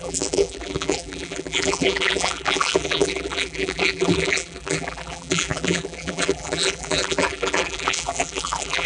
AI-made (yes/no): yes